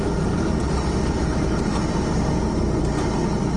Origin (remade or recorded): recorded